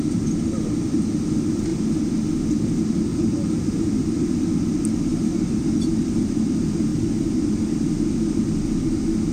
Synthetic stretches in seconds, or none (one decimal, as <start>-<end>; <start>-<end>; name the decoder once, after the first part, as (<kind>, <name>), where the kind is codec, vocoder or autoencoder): 3.1-3.8 (vocoder, BigVGAN v2)